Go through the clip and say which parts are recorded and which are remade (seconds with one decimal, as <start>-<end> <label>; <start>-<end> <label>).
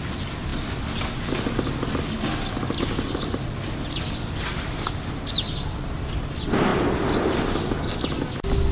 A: 0.0-8.7 recorded